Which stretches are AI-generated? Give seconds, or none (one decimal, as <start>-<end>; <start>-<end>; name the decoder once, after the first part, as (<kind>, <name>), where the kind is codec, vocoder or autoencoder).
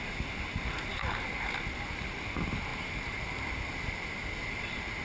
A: none